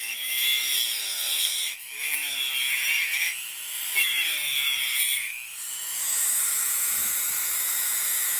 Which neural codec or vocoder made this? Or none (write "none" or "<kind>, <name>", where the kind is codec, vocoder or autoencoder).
autoencoder, DAC-VAE